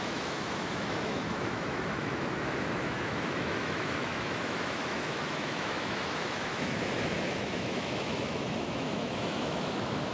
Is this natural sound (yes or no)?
no